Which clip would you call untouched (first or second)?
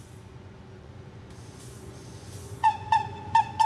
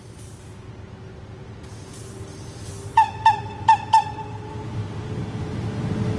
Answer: second